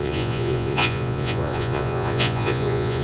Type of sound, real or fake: fake